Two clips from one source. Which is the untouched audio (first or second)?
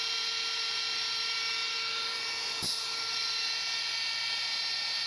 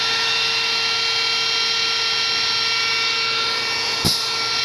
second